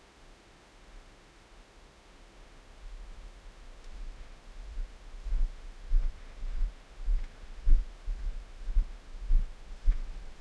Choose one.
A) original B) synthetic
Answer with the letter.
B